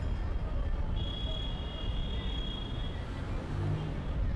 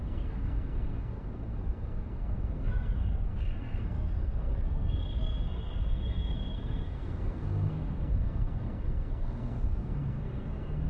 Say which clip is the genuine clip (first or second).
first